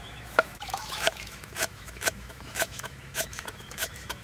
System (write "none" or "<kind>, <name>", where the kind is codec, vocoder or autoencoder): autoencoder, DAC-VAE